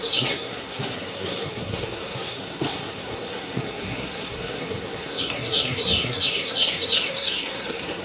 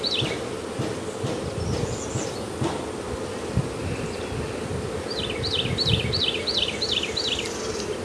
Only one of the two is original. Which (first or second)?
second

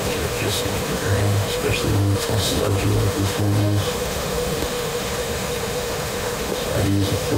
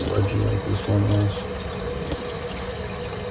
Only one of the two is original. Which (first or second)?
second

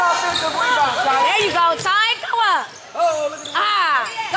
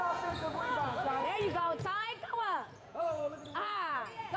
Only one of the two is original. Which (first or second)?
first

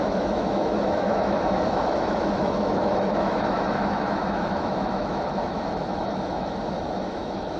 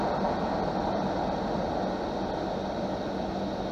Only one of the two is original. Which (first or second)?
second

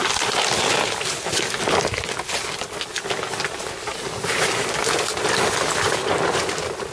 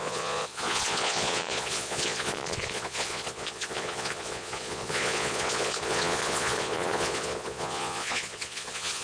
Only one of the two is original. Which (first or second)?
first